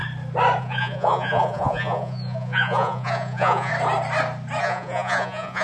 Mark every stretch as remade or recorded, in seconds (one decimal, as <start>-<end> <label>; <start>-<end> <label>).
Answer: 0.0-0.6 recorded; 0.6-3.7 remade; 3.7-4.6 recorded; 4.6-5.6 remade